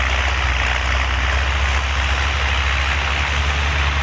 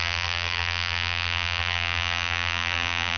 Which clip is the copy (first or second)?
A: second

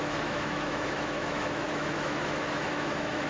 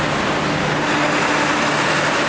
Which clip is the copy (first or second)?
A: first